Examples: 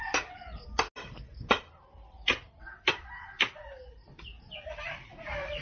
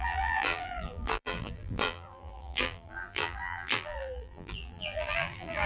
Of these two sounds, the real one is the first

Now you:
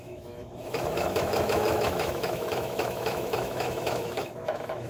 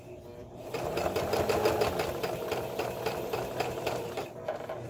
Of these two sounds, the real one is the second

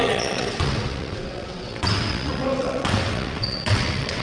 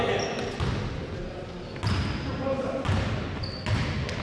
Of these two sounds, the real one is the second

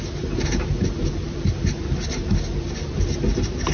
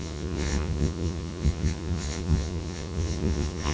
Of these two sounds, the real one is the first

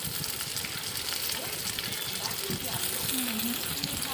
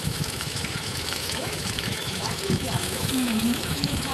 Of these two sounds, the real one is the first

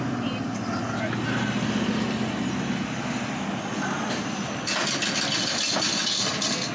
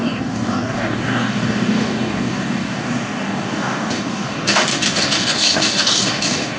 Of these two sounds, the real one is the first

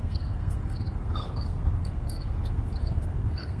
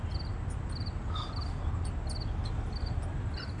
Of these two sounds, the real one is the second